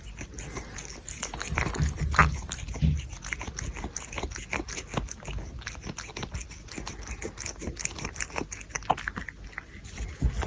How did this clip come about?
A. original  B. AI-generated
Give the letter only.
A